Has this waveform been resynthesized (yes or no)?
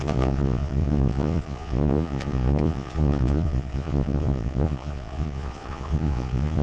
yes